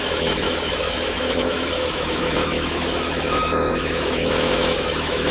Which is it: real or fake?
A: fake